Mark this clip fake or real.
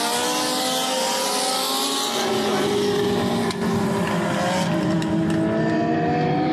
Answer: real